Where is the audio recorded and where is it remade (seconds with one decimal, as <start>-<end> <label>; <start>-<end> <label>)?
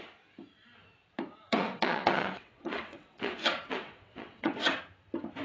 0.0-1.5 recorded; 1.5-4.7 remade; 4.7-5.4 recorded